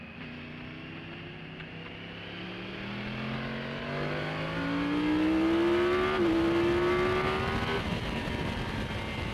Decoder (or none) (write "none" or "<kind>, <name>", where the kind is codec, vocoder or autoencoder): none